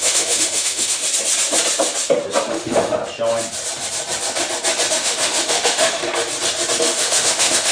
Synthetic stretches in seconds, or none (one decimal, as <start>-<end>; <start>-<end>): 0.0-1.0; 2.5-3.0; 4.9-6.0; 6.8-7.7